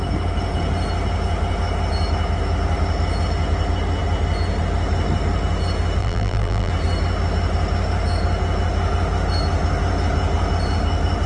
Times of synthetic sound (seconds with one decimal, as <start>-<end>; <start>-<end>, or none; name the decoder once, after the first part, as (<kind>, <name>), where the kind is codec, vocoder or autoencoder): 6.0-6.7 (vocoder, BigVGAN v2)